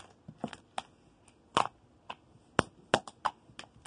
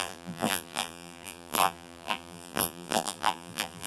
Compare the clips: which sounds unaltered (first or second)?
first